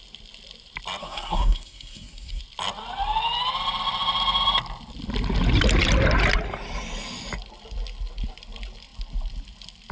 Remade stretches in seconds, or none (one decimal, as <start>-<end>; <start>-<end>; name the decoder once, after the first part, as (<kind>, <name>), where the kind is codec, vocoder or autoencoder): 1.0-2.4 (codec, SNAC)